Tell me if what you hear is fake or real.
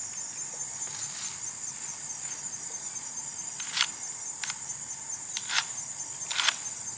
real